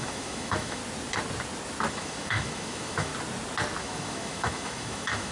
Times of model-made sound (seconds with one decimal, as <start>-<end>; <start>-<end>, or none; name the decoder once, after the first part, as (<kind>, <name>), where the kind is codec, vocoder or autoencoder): 0.0-0.8 (autoencoder, DAC-VAE); 1.9-3.1; 3.8-5.3